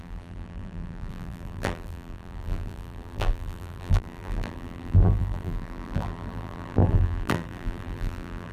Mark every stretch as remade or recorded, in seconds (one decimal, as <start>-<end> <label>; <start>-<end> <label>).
0.0-8.5 remade